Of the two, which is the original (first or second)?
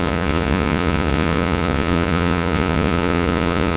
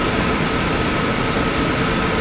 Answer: second